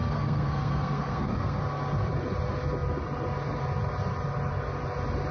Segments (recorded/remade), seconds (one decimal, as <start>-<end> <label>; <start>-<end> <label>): 0.0-1.6 remade; 1.6-5.3 recorded